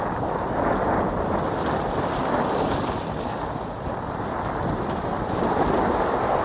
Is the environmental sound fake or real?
fake